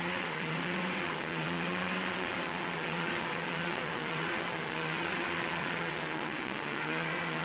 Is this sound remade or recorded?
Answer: remade